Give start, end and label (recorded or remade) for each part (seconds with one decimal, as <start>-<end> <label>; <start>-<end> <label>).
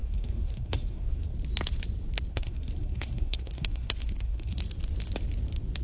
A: 0.0-1.3 remade; 1.3-2.3 recorded; 2.3-4.6 remade; 4.6-5.8 recorded